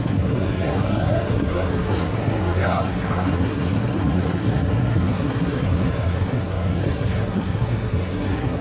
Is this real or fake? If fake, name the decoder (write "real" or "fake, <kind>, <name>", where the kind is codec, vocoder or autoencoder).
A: fake, codec, SNAC